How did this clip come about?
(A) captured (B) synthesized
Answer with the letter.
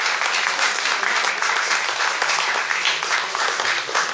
A